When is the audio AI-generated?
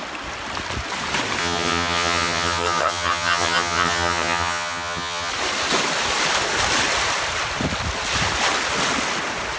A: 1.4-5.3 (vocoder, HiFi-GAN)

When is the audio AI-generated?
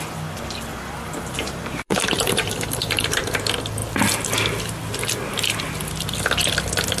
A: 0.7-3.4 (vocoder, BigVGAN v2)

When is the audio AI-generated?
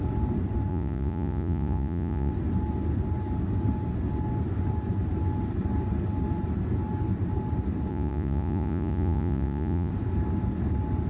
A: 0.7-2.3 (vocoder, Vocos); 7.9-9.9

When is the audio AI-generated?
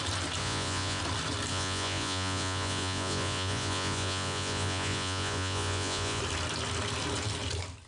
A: 0.4-1.0 (vocoder, Vocos); 1.5-6.2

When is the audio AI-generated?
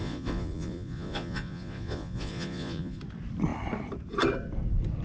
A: 0.0-3.0 (vocoder, Vocos)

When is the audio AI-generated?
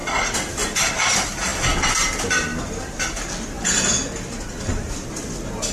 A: none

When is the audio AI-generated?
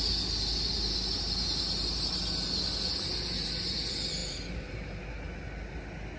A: 4.2-5.0 (vocoder, BigVGAN v2)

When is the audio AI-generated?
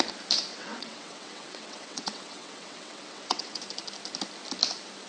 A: 0.5-3.6 (vocoder, WaveNeXt)